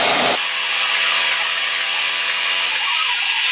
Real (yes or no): yes